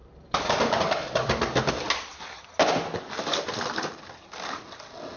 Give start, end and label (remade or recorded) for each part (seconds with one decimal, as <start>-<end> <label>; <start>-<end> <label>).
0.0-0.8 remade; 0.8-5.2 recorded